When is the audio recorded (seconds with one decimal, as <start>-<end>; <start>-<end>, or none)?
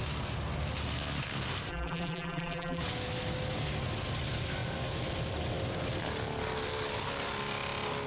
0.0-1.7; 2.8-8.1